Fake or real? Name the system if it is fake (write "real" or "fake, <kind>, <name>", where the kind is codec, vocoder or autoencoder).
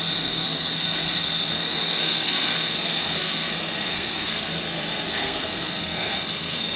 fake, codec, SNAC